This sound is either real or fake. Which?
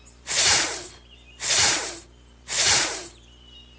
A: fake